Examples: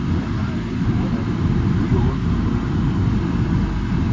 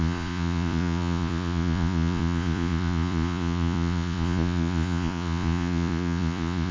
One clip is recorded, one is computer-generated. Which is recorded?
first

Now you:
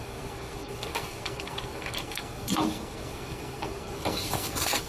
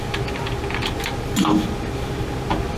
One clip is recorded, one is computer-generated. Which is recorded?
second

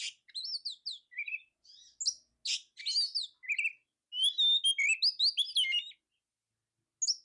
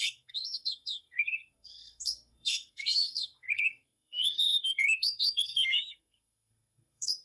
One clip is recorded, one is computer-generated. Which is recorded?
first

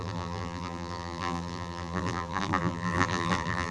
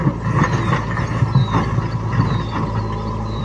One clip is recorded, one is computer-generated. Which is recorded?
second